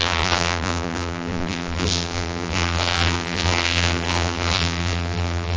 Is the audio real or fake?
fake